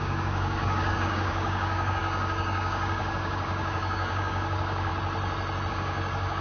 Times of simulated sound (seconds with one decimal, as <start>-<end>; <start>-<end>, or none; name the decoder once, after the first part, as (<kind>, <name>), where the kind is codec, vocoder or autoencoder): 0.0-4.9 (codec, DAC); 5.7-6.4